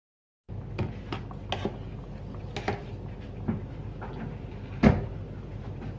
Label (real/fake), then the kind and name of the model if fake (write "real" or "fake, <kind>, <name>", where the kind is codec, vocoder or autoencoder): real